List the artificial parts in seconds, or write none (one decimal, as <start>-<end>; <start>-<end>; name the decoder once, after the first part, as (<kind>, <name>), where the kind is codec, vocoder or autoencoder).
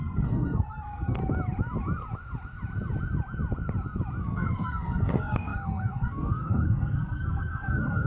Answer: 0.0-1.2 (codec, SNAC); 4.2-8.1